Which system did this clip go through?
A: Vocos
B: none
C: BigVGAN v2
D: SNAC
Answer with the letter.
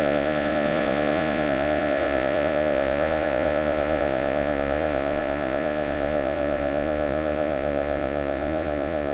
A